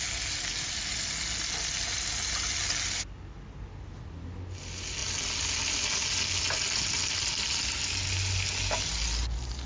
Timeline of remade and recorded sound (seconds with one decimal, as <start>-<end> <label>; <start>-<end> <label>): 0.0-9.7 recorded

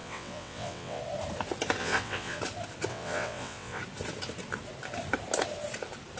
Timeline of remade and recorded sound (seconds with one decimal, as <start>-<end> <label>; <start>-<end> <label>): 0.0-1.0 remade; 1.0-1.8 recorded; 1.8-2.4 remade; 2.4-2.9 recorded; 2.9-3.8 remade; 3.8-6.2 recorded